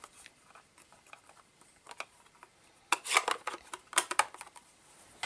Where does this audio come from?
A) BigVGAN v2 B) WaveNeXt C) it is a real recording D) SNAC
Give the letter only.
C